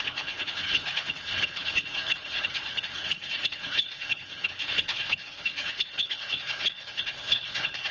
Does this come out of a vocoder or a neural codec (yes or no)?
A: yes